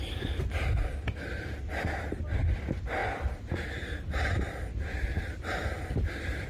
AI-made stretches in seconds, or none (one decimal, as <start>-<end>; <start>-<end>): none